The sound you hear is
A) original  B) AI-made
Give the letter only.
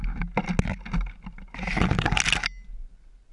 A